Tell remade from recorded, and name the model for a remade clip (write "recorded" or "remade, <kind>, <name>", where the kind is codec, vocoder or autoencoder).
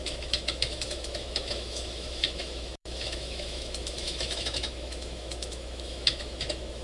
remade, autoencoder, DAC-VAE